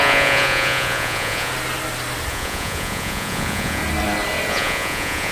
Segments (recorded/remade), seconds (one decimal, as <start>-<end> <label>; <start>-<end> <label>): 0.0-1.5 remade; 1.5-2.3 recorded; 2.3-3.8 remade; 3.8-4.5 recorded; 4.5-5.3 remade